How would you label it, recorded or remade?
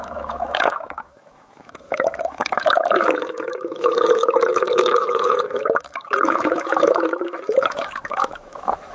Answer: remade